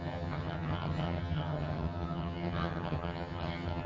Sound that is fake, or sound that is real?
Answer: fake